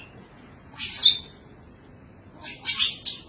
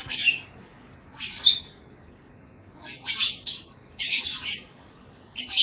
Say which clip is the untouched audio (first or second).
first